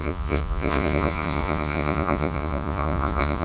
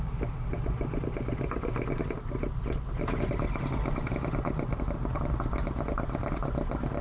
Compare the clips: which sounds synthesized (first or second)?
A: first